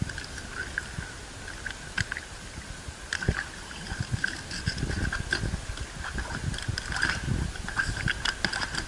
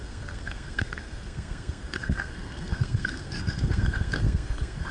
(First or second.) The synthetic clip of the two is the second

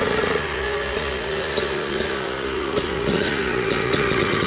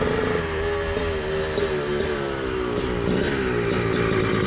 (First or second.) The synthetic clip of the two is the first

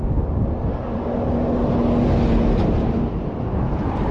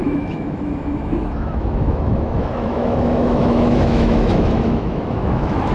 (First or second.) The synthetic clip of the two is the second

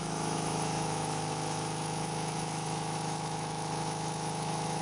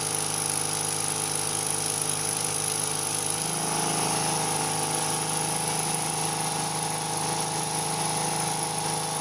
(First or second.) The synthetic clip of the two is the first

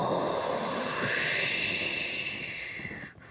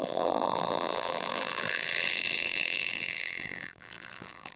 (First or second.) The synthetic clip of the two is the second